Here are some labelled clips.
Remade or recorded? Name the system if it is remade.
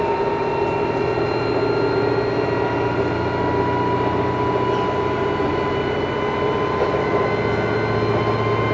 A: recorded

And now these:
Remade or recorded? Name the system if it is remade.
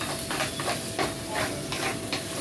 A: recorded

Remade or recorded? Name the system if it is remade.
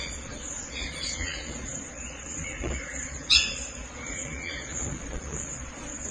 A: remade, vocoder, Vocos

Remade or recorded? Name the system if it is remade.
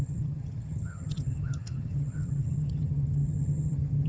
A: remade, vocoder, HiFi-GAN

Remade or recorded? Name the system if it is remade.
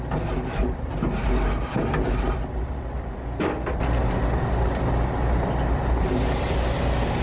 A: recorded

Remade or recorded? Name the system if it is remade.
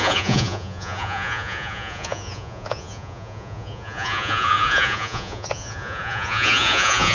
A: remade, vocoder, Vocos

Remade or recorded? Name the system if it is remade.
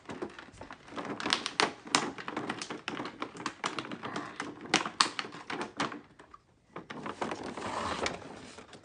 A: recorded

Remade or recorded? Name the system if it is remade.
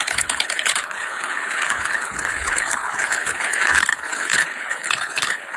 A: remade, codec, HILCodec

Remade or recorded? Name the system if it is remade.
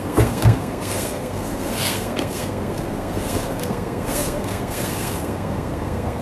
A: remade, codec, SNAC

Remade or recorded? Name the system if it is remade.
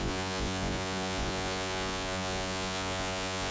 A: remade, vocoder, Vocos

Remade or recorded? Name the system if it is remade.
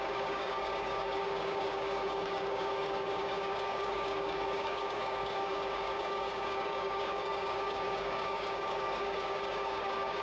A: remade, codec, DAC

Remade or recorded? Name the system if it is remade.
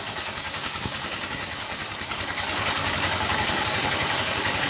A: remade, codec, DAC